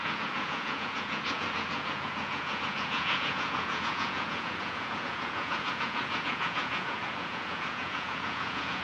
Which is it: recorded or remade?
remade